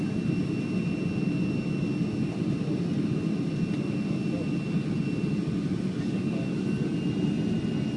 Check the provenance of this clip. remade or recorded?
recorded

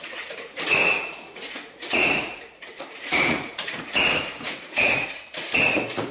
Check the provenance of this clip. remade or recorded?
remade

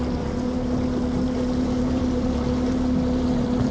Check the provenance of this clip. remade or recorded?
recorded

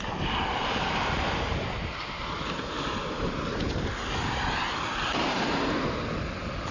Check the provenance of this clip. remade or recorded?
recorded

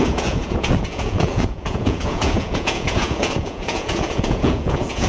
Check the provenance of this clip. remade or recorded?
remade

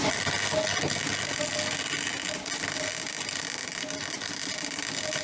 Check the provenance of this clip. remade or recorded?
recorded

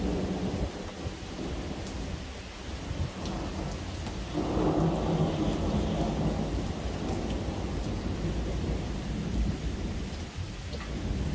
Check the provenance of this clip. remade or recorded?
recorded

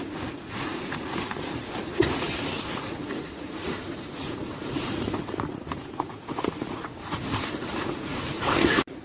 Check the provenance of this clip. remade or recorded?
remade